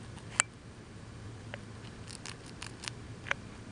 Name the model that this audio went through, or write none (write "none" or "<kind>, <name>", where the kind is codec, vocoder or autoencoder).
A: none